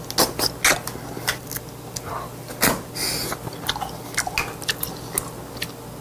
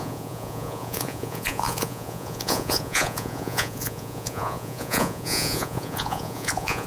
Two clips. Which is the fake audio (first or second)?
second